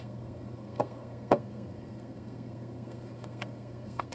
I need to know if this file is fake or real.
fake